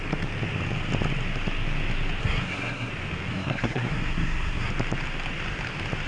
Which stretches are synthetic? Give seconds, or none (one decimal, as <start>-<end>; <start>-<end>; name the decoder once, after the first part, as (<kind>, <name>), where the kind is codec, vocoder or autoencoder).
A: 2.2-2.9 (codec, SNAC); 3.3-4.7